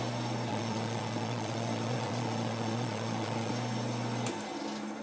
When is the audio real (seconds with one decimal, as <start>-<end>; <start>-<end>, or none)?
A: 0.0-0.5; 3.5-5.0